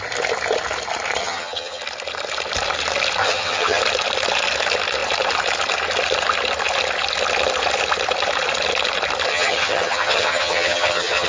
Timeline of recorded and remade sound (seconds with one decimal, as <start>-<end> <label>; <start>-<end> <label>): 0.0-1.2 recorded; 1.2-1.8 remade; 1.8-3.2 recorded; 3.2-3.8 remade; 3.8-9.3 recorded; 9.3-11.3 remade